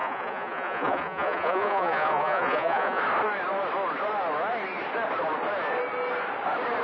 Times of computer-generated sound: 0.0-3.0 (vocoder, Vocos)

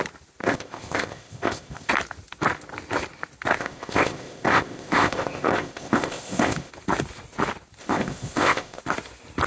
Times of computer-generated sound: 0.4-1.9 (codec, ZipCodec); 3.6-6.7; 7.8-8.8

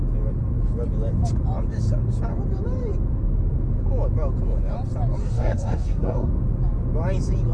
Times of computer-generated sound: 5.2-6.3 (codec, SNAC)

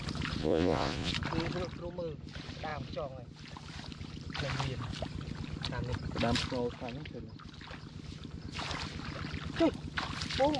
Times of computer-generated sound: 0.4-1.1 (vocoder, Vocos)